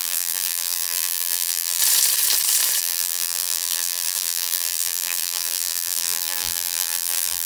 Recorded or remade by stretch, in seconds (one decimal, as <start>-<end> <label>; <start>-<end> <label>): 0.0-1.8 remade; 1.8-2.8 recorded; 2.8-7.5 remade